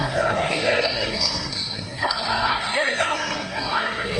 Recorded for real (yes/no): no